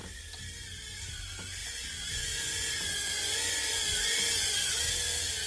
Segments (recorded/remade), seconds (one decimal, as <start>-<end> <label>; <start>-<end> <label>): 0.0-1.6 recorded; 1.6-4.8 remade; 4.8-5.5 recorded